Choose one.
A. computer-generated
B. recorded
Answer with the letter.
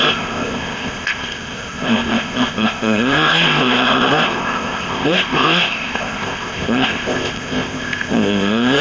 A